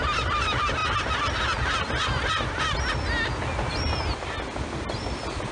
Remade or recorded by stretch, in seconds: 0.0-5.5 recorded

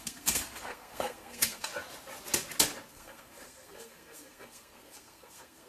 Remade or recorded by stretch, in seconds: 0.0-1.7 remade; 1.7-2.9 recorded; 2.9-5.7 remade

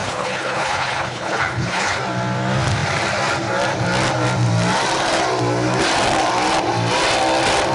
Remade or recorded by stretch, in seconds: 0.0-2.0 remade; 2.0-7.7 recorded

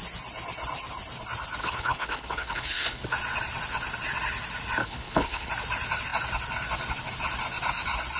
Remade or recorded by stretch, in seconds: 0.0-1.6 recorded; 1.6-3.0 remade; 3.0-4.8 recorded; 4.8-5.5 remade; 5.5-8.2 recorded

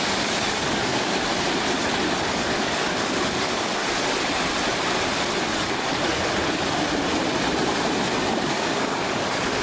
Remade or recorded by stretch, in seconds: 0.0-1.3 remade; 1.3-2.3 recorded; 2.3-3.8 remade; 3.8-8.2 recorded; 8.2-9.6 remade

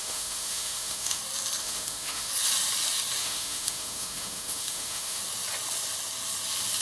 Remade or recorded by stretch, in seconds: 0.0-1.2 remade; 1.2-1.6 recorded; 1.6-2.3 remade; 2.3-3.2 recorded; 3.2-5.2 remade; 5.2-6.8 recorded